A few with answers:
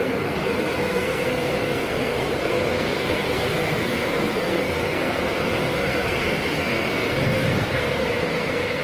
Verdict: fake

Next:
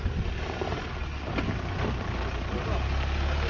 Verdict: real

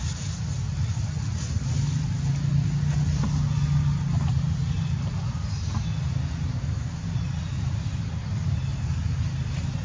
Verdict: real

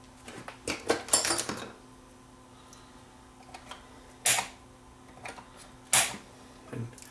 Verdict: real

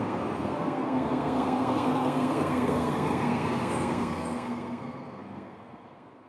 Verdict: fake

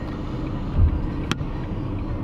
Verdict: real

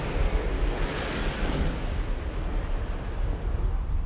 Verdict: real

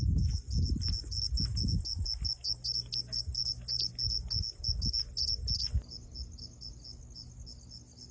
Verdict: real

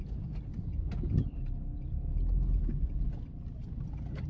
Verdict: real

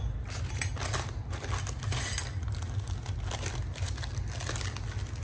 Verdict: real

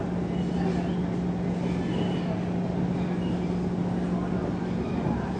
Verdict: real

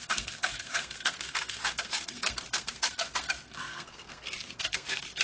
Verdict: fake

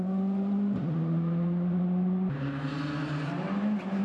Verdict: real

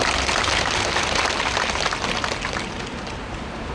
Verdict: real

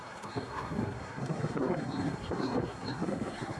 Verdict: fake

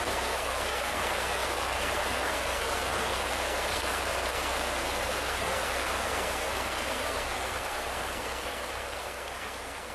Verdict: fake